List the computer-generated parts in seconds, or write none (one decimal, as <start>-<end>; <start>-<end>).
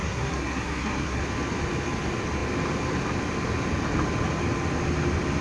0.0-1.2